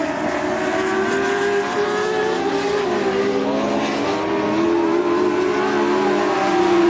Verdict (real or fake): real